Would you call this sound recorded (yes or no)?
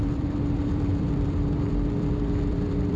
no